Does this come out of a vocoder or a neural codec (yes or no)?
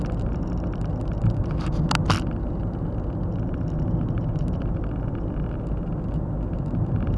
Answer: no